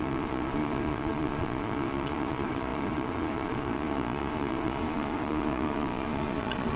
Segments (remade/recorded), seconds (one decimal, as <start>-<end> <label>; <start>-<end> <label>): 0.0-6.8 remade